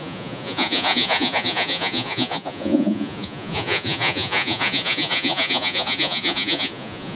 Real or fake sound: fake